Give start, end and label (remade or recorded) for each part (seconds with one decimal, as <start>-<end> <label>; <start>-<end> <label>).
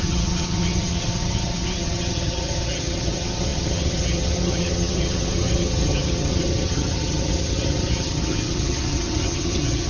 0.0-9.9 remade